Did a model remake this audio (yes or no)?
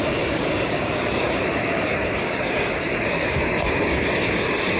yes